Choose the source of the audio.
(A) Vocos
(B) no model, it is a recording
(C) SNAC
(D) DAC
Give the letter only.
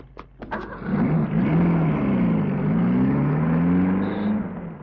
B